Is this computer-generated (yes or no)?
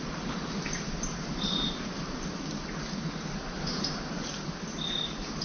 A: no